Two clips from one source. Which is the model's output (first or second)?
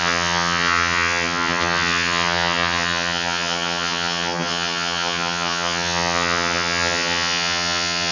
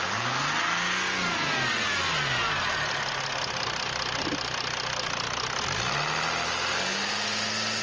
first